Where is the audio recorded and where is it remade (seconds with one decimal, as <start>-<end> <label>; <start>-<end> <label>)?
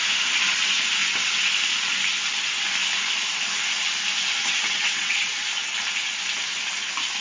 0.0-1.0 recorded; 1.0-1.5 remade; 1.5-4.4 recorded; 4.4-5.3 remade; 5.3-7.2 recorded